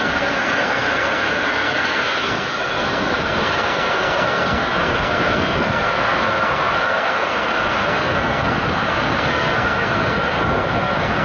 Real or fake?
fake